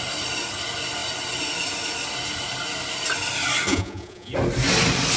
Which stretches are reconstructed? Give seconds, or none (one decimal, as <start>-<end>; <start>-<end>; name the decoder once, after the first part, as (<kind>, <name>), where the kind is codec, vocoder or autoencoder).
3.7-4.3 (vocoder, Vocos)